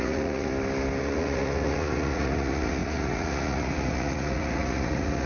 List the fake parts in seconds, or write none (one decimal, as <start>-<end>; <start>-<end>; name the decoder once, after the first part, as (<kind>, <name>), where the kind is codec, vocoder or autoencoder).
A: 0.0-0.5 (vocoder, Vocos); 1.0-5.3